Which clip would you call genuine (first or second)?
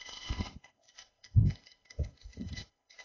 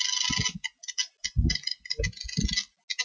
second